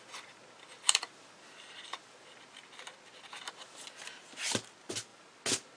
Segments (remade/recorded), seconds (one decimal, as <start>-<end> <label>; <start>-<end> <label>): 0.0-5.8 recorded